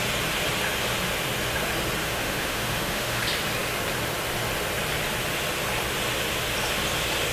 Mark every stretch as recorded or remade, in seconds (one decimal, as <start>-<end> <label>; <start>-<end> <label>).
0.0-2.0 recorded; 2.0-3.2 remade; 3.2-7.3 recorded